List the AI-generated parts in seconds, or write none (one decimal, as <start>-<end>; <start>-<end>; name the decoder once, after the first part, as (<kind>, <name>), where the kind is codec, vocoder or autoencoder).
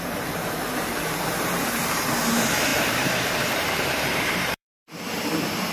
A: 0.0-5.7 (vocoder, BigVGAN v2)